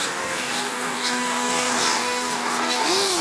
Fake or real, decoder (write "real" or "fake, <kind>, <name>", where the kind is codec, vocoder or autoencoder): fake, codec, DAC